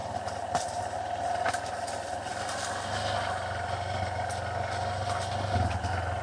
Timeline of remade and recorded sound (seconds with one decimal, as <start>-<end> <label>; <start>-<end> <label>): 0.0-6.2 recorded